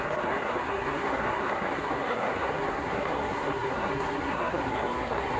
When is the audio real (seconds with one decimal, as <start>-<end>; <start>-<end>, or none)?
none